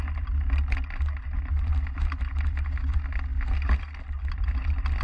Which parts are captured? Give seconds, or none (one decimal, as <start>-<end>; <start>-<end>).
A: 0.0-5.0